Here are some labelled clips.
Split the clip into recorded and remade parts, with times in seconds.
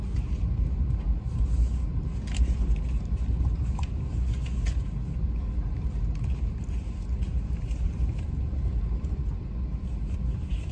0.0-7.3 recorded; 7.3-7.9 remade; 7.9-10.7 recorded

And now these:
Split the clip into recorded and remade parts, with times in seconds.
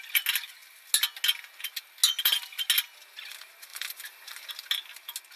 0.0-3.7 recorded; 3.7-4.5 remade; 4.5-5.4 recorded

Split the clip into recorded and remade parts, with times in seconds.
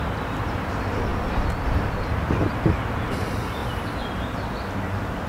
0.0-1.1 recorded; 1.1-2.5 remade; 2.5-3.6 recorded; 3.6-4.7 remade; 4.7-5.3 recorded